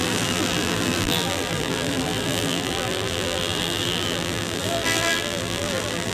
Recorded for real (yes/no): no